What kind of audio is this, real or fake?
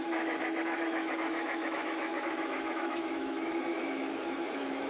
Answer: fake